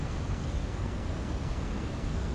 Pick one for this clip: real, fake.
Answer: fake